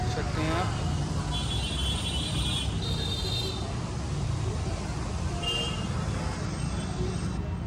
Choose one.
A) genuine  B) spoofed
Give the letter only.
A